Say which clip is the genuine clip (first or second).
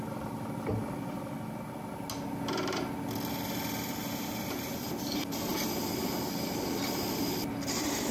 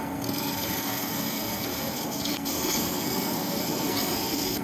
first